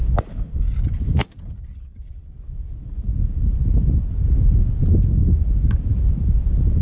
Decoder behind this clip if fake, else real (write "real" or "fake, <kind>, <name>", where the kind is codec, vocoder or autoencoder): real